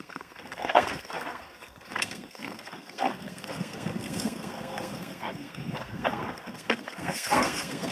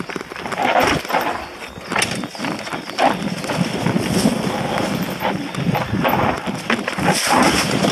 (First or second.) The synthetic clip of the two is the first